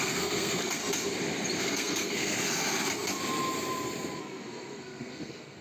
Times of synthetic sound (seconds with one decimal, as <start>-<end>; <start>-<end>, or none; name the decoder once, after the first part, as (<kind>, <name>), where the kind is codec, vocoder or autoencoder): 0.0-0.8 (codec, SNAC); 1.6-2.4; 4.2-5.6